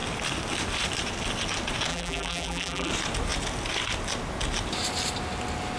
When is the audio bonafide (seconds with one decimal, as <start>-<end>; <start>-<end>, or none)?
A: 0.0-1.9; 2.9-5.8